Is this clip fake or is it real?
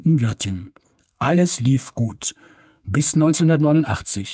fake